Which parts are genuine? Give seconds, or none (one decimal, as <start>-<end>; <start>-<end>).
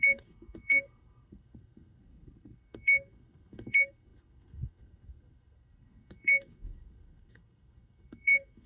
none